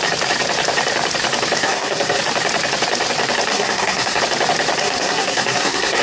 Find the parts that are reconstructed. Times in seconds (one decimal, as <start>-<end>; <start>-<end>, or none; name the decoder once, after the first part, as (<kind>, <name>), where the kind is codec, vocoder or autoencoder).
1.6-2.2 (codec, SNAC); 3.5-4.2; 4.8-6.0